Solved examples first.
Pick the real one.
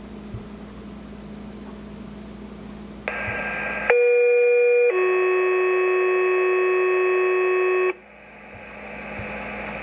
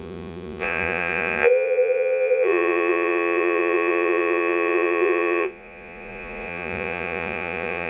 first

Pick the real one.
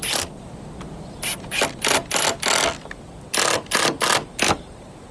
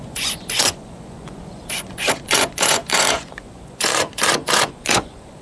first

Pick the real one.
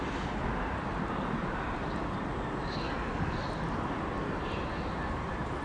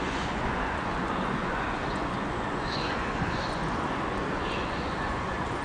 first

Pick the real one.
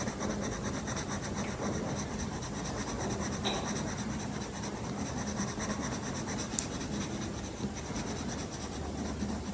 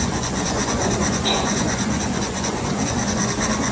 first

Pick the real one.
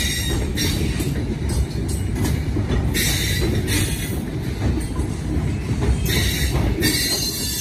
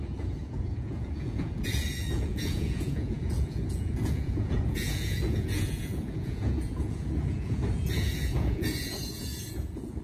first